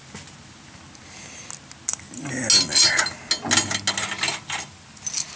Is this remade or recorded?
recorded